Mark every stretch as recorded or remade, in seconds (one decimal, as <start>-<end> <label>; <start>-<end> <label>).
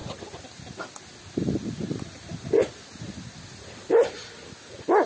0.0-5.1 recorded